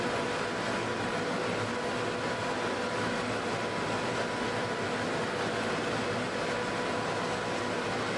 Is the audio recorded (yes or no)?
yes